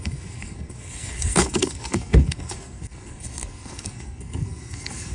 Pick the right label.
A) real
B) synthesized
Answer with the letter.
B